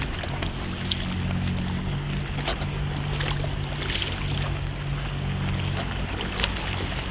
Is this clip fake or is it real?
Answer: real